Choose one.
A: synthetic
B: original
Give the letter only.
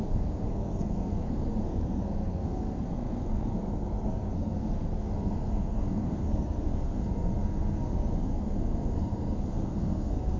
A